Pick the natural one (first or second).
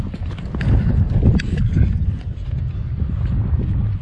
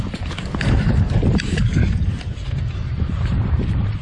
first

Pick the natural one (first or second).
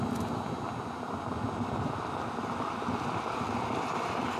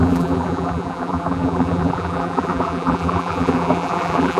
first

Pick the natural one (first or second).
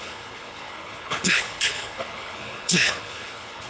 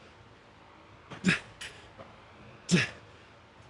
second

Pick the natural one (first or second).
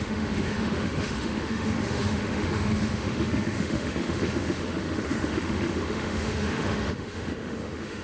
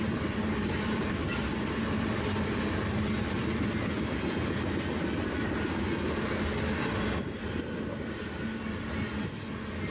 second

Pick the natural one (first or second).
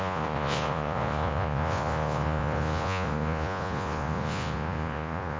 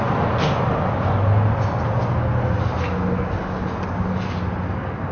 second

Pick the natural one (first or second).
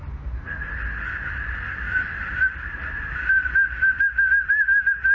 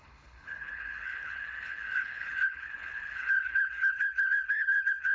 first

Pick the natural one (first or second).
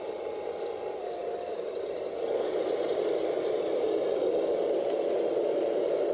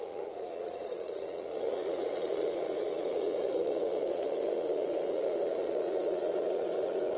first